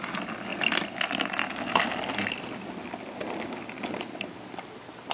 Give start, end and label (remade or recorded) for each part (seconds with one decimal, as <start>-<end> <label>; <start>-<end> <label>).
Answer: 0.0-5.1 recorded